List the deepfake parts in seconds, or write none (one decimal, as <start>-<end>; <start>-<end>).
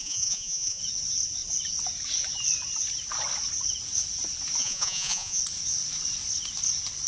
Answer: 0.0-0.8; 4.6-5.4